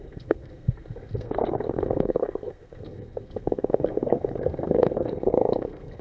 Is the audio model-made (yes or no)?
yes